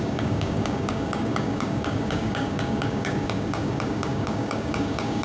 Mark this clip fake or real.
fake